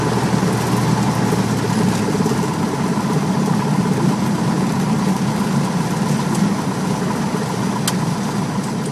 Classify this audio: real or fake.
real